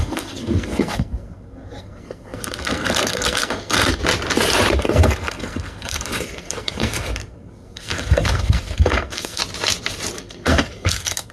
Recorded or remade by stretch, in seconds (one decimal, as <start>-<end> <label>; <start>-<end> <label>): 0.0-4.0 remade; 4.0-4.7 recorded; 4.7-9.4 remade; 9.4-10.2 recorded; 10.2-11.3 remade